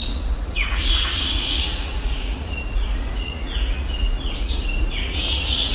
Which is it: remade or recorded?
remade